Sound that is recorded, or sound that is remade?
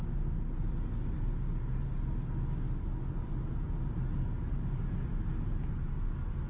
recorded